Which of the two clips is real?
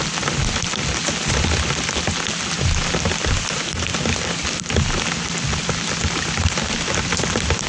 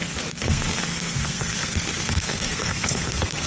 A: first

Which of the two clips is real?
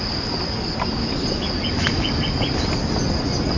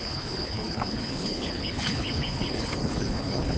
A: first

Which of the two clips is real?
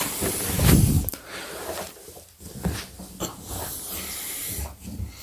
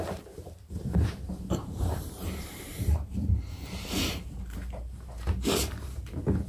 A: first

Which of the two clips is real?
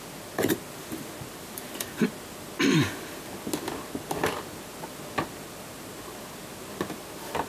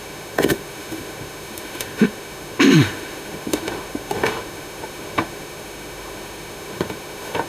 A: first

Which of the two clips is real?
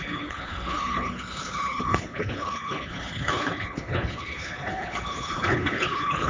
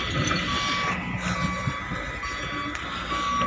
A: second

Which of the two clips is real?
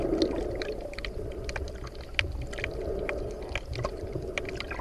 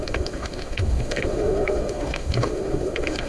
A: first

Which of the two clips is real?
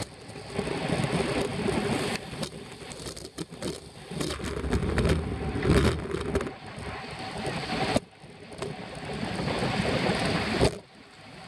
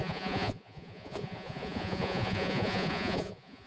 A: first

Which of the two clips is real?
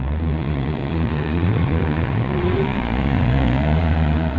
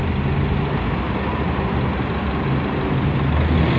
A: second